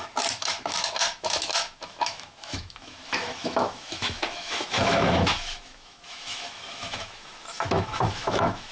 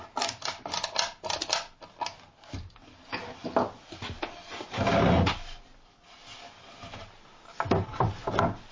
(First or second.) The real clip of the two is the second